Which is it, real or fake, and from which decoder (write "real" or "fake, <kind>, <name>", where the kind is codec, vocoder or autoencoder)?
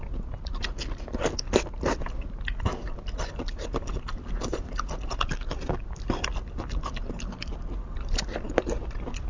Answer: real